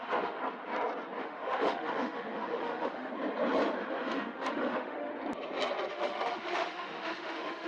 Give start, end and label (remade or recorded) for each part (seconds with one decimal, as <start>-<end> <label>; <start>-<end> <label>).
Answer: 0.0-0.4 remade; 0.4-1.2 recorded; 1.2-3.1 remade; 3.1-3.9 recorded; 3.9-5.1 remade; 5.1-5.9 recorded; 5.9-7.7 remade